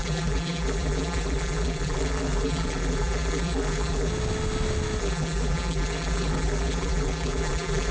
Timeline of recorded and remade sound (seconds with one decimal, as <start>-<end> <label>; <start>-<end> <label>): 0.0-4.1 remade; 4.1-5.0 recorded; 5.0-7.9 remade